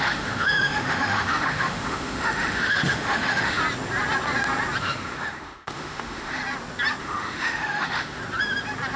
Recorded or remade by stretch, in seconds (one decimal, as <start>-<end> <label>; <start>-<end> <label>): 0.0-3.6 remade; 3.6-4.8 recorded; 4.8-6.4 remade; 6.4-7.0 recorded; 7.0-8.2 remade; 8.2-9.0 recorded